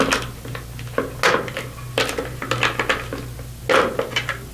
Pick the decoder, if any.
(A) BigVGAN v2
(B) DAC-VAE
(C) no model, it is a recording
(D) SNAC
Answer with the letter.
C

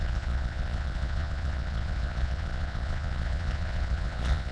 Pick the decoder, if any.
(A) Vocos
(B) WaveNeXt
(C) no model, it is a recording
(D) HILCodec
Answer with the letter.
A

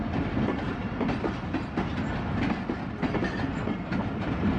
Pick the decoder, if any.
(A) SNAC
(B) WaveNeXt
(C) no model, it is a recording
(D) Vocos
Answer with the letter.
C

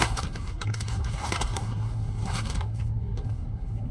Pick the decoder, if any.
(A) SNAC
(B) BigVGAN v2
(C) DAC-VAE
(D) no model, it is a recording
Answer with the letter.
A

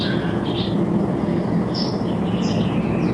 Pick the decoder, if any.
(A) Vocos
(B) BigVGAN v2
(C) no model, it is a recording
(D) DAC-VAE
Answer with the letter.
C